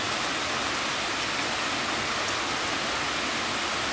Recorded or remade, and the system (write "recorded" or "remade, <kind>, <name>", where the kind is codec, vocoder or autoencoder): recorded